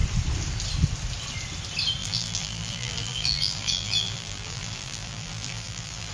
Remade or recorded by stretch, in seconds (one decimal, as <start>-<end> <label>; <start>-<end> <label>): 0.0-2.0 recorded; 2.0-6.1 remade